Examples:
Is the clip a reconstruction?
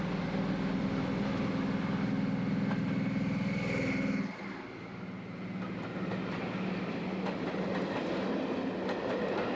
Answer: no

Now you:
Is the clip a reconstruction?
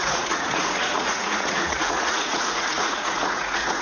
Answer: yes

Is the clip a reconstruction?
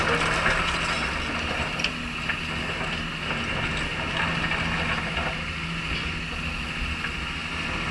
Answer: no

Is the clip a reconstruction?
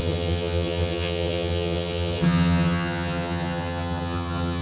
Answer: yes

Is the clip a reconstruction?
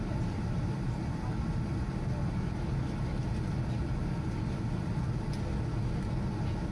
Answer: no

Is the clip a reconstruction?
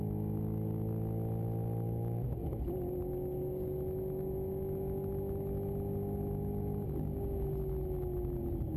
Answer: no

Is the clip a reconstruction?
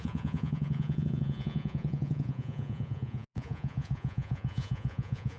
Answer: yes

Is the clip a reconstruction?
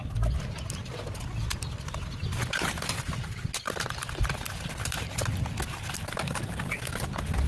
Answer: no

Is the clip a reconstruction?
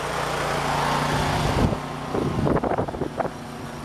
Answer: no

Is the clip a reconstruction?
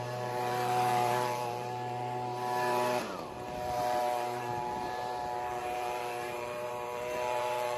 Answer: yes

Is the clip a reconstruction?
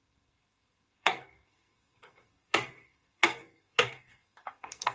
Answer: yes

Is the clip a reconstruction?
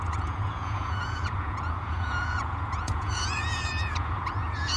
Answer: yes